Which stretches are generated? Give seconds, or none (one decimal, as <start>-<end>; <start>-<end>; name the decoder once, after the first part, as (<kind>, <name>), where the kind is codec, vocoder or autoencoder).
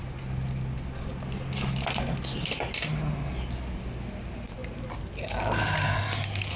none